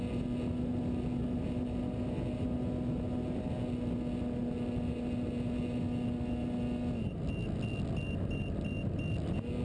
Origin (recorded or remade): recorded